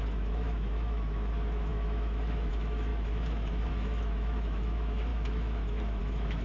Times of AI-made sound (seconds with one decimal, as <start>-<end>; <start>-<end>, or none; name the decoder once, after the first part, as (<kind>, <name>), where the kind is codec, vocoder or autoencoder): 0.0-6.4 (autoencoder, DAC-VAE)